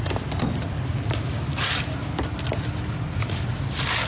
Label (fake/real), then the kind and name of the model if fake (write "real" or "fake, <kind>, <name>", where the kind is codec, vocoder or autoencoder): real